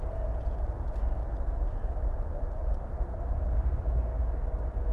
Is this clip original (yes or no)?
yes